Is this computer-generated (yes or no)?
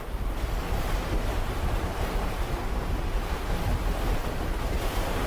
no